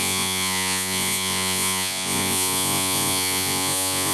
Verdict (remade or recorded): remade